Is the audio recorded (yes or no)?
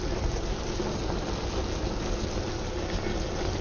yes